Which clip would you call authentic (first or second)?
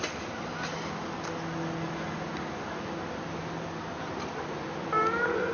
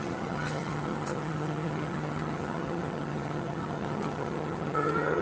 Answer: first